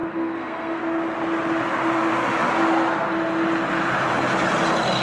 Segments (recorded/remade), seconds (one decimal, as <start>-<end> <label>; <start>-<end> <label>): 0.0-0.8 remade; 0.8-5.0 recorded